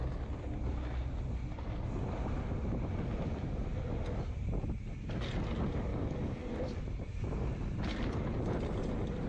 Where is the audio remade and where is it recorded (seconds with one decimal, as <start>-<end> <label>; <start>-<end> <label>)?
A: 0.0-5.9 recorded; 5.9-6.5 remade; 6.5-9.3 recorded